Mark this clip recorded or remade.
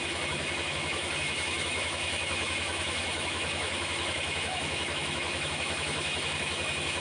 remade